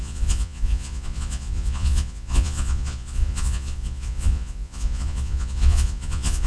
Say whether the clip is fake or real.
fake